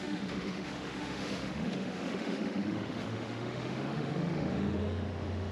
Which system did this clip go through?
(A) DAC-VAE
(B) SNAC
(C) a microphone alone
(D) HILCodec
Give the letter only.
A